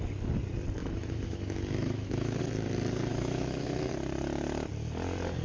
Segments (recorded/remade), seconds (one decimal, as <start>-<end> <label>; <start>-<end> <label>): 0.0-0.8 recorded; 0.8-2.4 remade; 2.4-3.1 recorded; 3.1-3.9 remade; 3.9-5.4 recorded